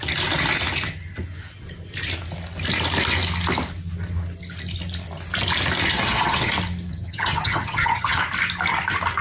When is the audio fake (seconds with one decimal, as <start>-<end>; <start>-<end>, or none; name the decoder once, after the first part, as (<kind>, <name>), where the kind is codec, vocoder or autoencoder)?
5.9-6.5 (vocoder, HiFi-GAN); 6.9-8.2